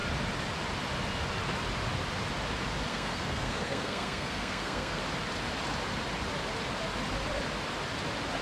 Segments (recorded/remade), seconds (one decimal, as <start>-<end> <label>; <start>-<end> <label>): 0.0-2.9 recorded; 2.9-5.0 remade; 5.0-8.4 recorded